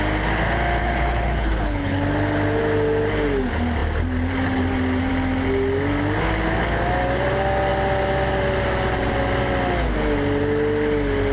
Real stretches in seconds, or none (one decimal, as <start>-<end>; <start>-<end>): 0.0-0.8; 2.0-11.3